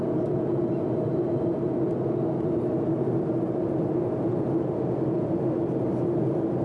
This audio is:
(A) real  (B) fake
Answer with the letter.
A